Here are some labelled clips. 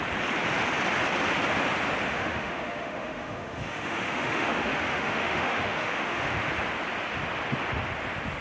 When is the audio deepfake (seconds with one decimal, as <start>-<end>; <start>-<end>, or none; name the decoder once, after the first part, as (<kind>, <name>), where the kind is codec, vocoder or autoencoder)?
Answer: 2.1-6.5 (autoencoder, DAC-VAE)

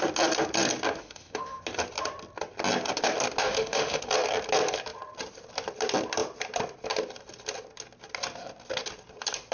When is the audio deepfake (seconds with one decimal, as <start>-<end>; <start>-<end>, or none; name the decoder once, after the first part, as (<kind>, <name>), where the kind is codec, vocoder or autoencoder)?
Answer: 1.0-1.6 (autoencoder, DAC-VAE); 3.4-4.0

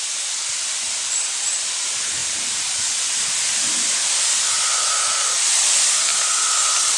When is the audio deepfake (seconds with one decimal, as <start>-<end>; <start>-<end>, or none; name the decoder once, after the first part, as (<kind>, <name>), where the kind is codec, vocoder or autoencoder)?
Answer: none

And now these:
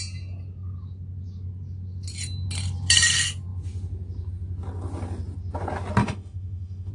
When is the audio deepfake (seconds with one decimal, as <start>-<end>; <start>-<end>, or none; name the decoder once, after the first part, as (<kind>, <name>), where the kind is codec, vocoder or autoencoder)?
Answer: 6.0-6.9 (autoencoder, DAC-VAE)

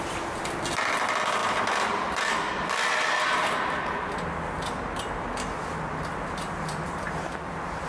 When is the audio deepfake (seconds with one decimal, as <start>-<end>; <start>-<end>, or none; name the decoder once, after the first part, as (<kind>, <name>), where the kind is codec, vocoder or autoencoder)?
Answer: none

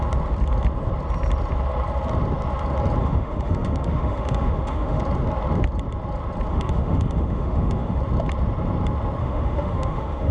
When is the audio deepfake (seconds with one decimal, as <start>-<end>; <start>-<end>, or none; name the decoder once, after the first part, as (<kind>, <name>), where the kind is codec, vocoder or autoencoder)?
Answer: 3.0-5.0 (autoencoder, DAC-VAE); 6.5-8.0; 9.2-10.3

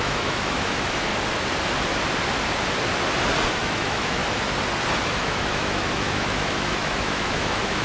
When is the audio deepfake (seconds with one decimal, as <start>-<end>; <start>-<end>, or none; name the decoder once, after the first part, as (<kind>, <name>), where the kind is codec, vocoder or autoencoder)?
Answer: 0.0-1.1 (autoencoder, DAC-VAE); 3.5-4.2; 5.0-7.8

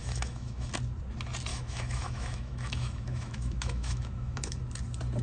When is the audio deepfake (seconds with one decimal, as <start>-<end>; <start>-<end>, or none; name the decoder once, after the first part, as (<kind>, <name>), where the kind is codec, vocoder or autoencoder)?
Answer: 0.0-0.7 (autoencoder, DAC-VAE); 1.5-4.6